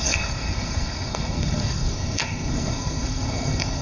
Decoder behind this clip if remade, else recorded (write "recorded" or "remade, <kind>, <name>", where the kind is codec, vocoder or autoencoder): remade, codec, SNAC